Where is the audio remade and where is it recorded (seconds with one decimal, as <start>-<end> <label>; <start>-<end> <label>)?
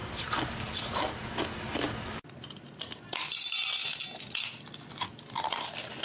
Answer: 0.0-2.8 remade; 2.8-6.0 recorded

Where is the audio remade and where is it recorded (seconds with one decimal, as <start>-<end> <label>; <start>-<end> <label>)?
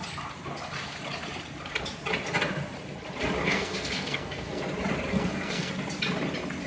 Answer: 0.0-3.4 recorded; 3.4-4.6 remade; 4.6-5.1 recorded; 5.1-5.7 remade; 5.7-6.7 recorded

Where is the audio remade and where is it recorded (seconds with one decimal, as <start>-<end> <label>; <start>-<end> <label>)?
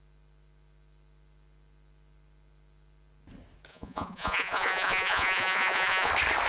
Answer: 0.0-3.7 recorded; 3.7-6.1 remade; 6.1-6.5 recorded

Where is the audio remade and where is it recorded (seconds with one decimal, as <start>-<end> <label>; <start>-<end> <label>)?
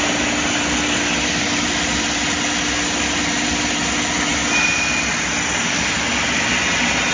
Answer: 0.0-7.1 recorded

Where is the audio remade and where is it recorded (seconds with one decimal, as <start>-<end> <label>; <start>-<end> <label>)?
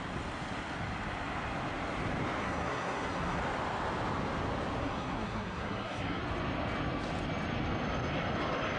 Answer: 0.0-2.4 recorded; 2.4-3.4 remade; 3.4-4.8 recorded; 4.8-6.2 remade; 6.2-8.8 recorded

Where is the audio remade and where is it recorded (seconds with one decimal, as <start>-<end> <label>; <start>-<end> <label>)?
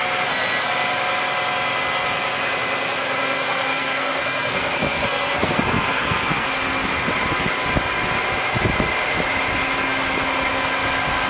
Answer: 0.0-3.2 recorded; 3.2-6.5 remade; 6.5-11.3 recorded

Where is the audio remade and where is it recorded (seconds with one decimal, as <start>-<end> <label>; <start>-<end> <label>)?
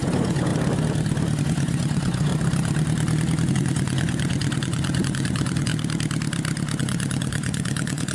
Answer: 0.0-0.5 remade; 0.5-1.4 recorded; 1.4-2.3 remade; 2.3-3.5 recorded; 3.5-5.7 remade; 5.7-6.8 recorded; 6.8-8.1 remade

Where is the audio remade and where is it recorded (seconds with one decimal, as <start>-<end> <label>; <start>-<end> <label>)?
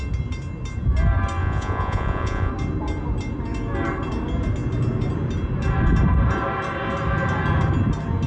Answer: 0.0-1.4 recorded; 1.4-2.5 remade; 2.5-8.3 recorded